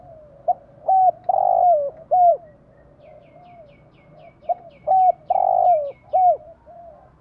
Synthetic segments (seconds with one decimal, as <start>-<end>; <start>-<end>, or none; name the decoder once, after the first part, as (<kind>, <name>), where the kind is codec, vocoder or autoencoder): none